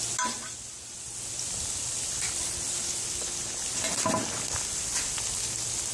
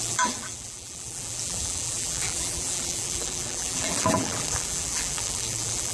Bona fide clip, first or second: first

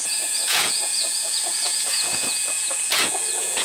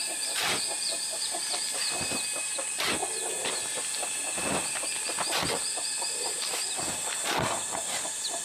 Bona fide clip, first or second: second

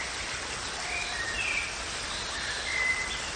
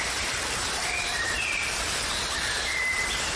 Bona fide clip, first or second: first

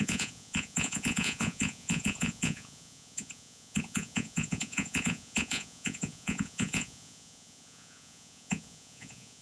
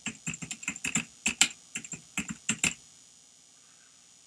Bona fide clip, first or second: second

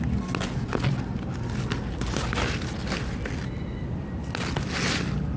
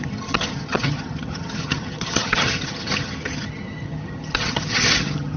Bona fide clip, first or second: first